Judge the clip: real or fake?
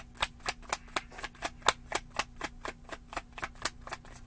real